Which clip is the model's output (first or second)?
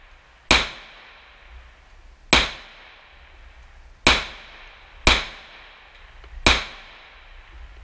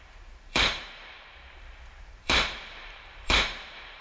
second